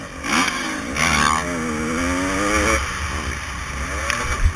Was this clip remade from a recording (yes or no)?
no